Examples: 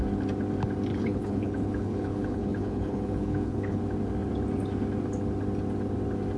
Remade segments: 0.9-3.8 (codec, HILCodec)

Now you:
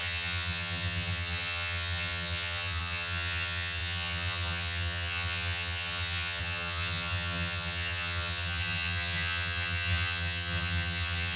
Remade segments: 0.0-11.4 (vocoder, HiFi-GAN)

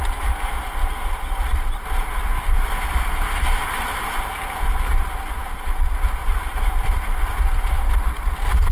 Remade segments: 2.3-4.9 (vocoder, BigVGAN v2); 6.2-8.7

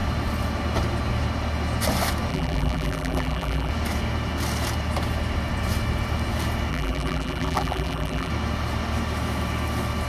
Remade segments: 2.3-3.7 (vocoder, BigVGAN v2); 6.7-8.3

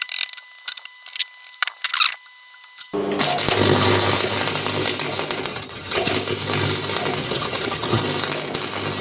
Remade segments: 5.5-6.1 (vocoder, HiFi-GAN); 7.2-8.0

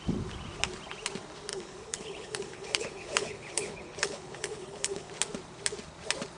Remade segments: 1.5-5.1 (codec, HILCodec)

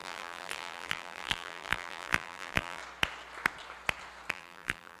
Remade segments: 0.0-2.8 (vocoder, BigVGAN v2); 4.3-5.0

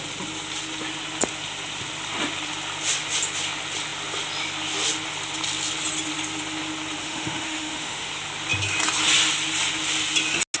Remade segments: 7.0-8.1 (autoencoder, DAC-VAE)